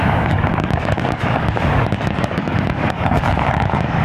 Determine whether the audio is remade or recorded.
remade